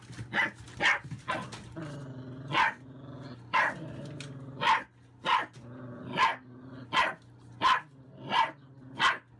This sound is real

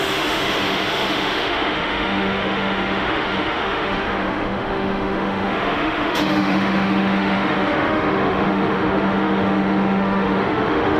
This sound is fake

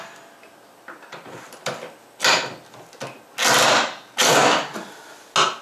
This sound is real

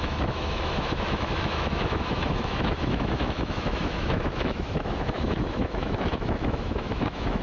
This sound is fake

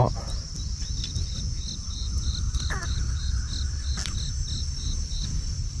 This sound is real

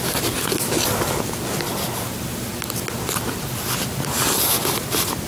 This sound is real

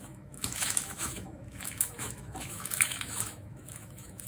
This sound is fake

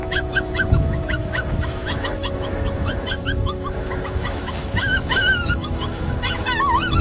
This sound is fake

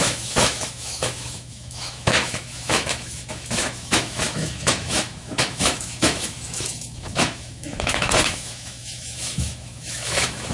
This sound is fake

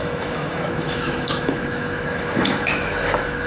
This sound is fake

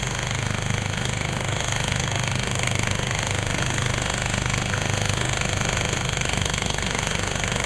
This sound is fake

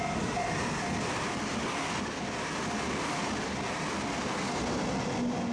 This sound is real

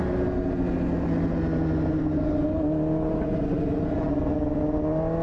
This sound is real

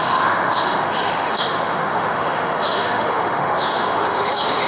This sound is fake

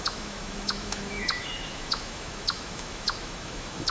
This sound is fake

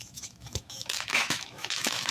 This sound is fake